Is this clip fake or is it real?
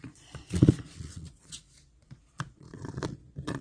fake